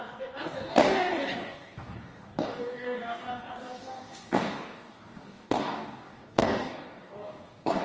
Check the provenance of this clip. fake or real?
fake